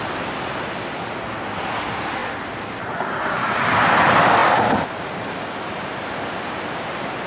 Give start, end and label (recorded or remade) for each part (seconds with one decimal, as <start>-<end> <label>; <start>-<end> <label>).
0.0-7.3 recorded